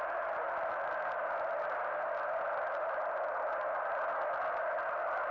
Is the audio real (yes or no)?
yes